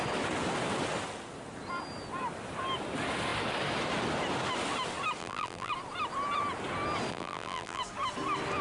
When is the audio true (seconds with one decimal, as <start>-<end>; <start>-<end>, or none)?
0.0-5.2; 5.7-7.1; 7.8-8.6